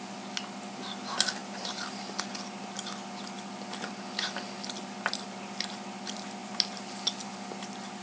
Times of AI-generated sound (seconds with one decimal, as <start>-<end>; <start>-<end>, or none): 1.4-2.3; 6.4-6.9